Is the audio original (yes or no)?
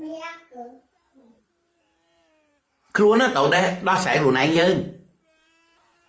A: no